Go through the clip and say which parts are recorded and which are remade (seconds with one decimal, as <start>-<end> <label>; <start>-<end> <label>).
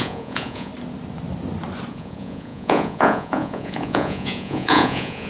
0.0-0.7 remade; 0.7-1.9 recorded; 1.9-5.3 remade